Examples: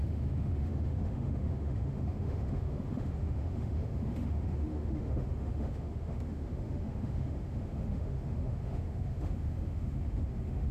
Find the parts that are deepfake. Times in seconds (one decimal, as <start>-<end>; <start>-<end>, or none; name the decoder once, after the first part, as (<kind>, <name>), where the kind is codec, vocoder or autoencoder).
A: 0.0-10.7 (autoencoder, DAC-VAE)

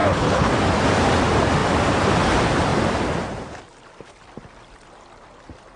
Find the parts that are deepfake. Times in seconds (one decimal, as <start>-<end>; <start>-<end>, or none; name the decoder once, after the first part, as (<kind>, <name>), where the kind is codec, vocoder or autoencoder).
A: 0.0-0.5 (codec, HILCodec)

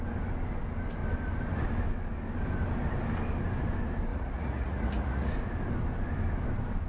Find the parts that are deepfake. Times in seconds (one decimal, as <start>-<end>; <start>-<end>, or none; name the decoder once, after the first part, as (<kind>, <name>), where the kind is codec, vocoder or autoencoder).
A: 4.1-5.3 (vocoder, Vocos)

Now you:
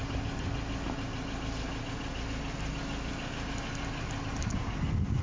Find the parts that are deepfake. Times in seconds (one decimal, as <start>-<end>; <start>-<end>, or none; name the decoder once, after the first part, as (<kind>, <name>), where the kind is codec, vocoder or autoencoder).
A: none

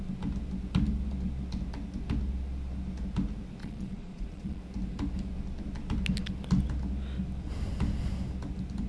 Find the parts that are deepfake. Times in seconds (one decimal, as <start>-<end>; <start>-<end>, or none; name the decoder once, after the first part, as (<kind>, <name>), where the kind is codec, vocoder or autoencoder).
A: 3.6-4.6 (vocoder, Vocos)

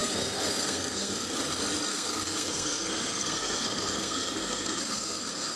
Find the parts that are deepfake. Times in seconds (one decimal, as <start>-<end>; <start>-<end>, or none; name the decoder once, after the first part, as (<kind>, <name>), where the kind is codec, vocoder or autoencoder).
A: 0.0-1.4 (codec, SNAC); 1.9-5.6

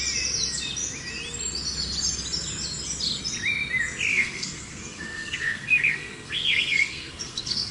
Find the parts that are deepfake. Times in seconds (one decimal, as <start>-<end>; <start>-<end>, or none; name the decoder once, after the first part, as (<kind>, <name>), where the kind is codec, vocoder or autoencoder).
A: 4.1-7.7 (codec, SNAC)

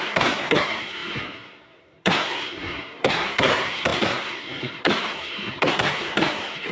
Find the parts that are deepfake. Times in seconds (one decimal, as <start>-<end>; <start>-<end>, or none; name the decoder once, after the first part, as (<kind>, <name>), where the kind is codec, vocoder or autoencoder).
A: 0.0-6.7 (codec, SNAC)